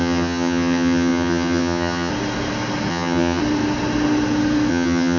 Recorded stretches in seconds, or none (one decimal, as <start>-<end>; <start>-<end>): 2.1-2.9; 3.4-4.7